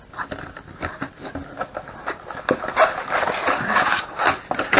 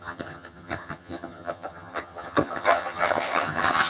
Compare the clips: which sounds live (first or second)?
first